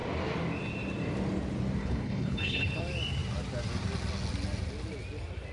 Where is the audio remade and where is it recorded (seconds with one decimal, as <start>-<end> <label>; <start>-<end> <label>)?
0.0-1.8 recorded; 1.8-2.8 remade; 2.8-5.5 recorded